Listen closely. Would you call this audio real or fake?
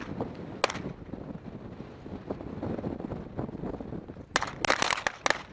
real